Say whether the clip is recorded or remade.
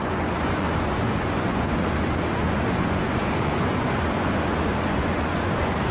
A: remade